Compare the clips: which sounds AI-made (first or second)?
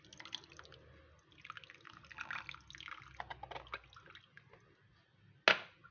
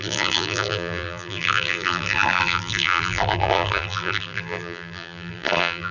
second